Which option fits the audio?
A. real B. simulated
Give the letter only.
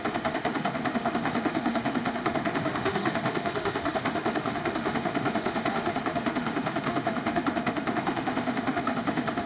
B